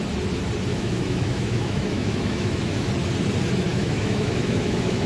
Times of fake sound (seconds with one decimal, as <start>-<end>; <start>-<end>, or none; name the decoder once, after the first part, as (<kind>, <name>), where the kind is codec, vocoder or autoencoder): 0.7-2.9 (autoencoder, DAC-VAE); 3.7-5.1